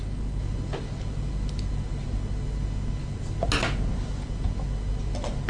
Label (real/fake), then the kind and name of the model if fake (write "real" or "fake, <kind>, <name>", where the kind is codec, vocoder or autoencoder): real